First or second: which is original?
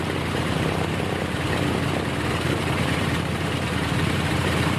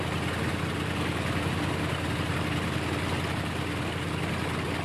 second